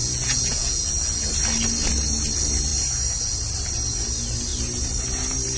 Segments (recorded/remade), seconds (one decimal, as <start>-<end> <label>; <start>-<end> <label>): 0.0-0.8 remade; 0.8-5.6 recorded